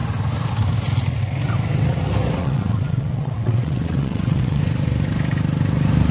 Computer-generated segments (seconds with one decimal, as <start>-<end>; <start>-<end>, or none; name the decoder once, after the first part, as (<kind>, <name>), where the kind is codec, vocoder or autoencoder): 2.4-4.6 (vocoder, WaveNeXt)